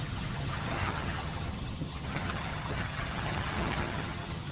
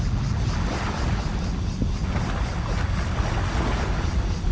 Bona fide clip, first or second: second